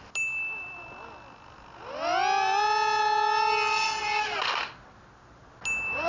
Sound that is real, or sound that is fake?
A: real